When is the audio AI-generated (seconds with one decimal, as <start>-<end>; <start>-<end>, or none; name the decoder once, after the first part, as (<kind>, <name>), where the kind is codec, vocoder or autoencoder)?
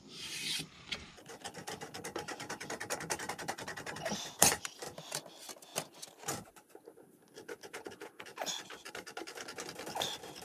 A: 1.6-4.8 (vocoder, BigVGAN v2)